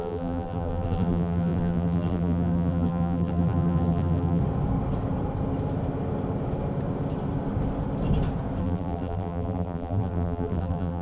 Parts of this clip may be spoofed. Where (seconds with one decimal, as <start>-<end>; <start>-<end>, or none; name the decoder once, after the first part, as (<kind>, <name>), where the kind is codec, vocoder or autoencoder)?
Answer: 0.0-4.4 (vocoder, BigVGAN v2); 8.6-11.0